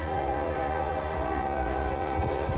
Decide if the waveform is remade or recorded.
remade